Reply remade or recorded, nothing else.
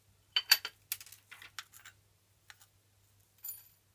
recorded